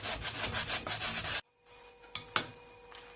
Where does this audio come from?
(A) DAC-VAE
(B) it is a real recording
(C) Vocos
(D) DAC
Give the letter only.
B